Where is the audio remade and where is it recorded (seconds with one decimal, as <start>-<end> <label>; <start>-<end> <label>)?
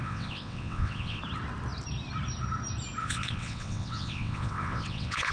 0.0-1.2 remade; 1.2-3.0 recorded; 3.0-5.3 remade